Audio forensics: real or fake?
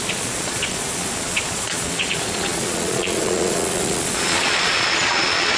fake